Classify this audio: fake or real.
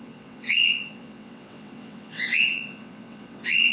fake